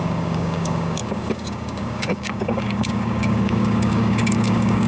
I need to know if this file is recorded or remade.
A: remade